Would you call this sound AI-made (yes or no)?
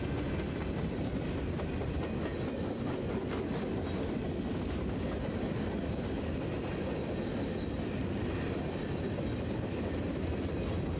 no